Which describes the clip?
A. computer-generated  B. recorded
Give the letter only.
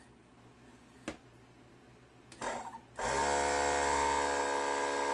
B